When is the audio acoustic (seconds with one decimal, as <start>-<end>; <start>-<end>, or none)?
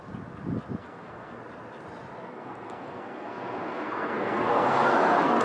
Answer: 0.0-0.8; 1.4-2.2